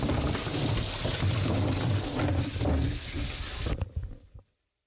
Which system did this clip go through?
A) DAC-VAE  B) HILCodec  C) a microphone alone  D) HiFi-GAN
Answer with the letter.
C